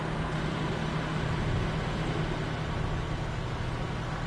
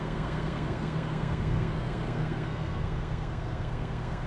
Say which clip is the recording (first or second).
first